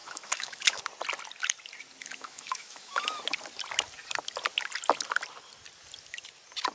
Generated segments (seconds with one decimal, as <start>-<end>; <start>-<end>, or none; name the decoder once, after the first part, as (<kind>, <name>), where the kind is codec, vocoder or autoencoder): 0.0-0.8 (autoencoder, DAC-VAE); 2.0-3.2